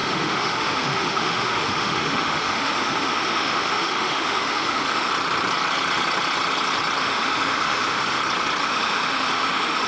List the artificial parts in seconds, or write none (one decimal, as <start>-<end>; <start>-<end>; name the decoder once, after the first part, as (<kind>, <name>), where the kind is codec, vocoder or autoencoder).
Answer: 0.0-5.1 (autoencoder, DAC-VAE); 7.0-8.2; 8.6-9.9